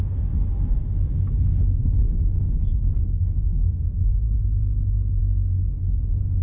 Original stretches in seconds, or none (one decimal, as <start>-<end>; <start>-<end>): 0.0-1.8; 2.5-3.0; 4.3-6.4